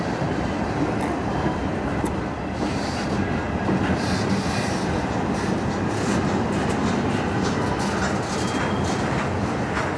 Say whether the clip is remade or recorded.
recorded